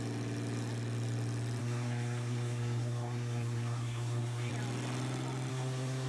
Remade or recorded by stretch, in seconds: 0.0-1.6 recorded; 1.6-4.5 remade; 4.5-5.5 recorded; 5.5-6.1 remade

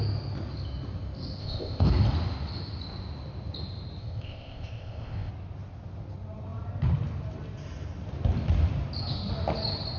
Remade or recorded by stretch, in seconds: 0.0-1.4 recorded; 1.4-1.9 remade; 1.9-4.0 recorded; 4.0-5.3 remade; 5.3-10.0 recorded

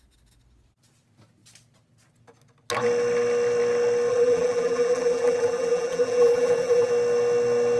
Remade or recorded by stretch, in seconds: 0.0-4.1 recorded; 4.1-6.9 remade; 6.9-7.8 recorded

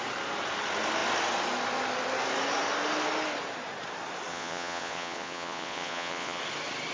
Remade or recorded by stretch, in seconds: 0.0-4.3 recorded; 4.3-6.4 remade; 6.4-6.9 recorded